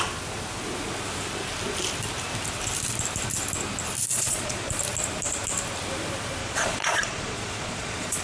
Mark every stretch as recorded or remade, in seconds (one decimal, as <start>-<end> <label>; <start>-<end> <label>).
0.0-4.1 recorded; 4.1-4.8 remade; 4.8-6.4 recorded; 6.4-8.2 remade